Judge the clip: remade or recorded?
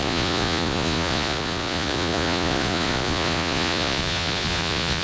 remade